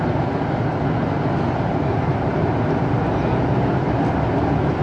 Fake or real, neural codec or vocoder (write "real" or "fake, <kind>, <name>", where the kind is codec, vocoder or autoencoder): real